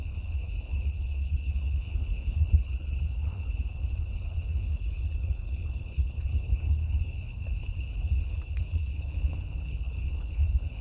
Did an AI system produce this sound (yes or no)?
yes